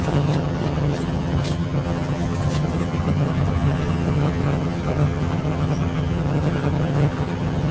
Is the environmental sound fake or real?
fake